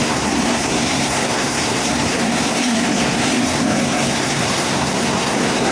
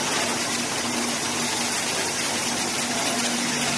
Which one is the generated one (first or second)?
first